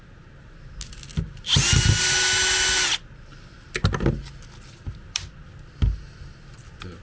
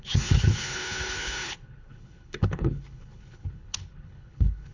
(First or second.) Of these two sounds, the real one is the first